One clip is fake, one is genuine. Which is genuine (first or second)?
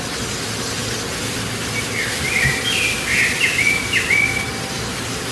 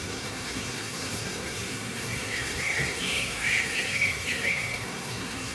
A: first